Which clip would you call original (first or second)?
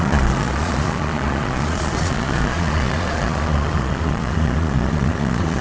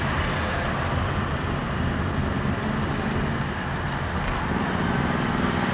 second